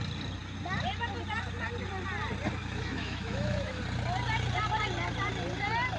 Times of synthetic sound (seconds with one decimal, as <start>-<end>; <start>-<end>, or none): 2.6-3.8